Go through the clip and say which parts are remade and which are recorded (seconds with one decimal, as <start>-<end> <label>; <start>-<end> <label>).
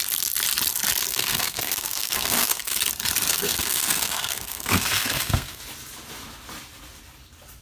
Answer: 0.0-1.1 recorded; 1.1-2.8 remade; 2.8-3.3 recorded; 3.3-5.6 remade; 5.6-7.6 recorded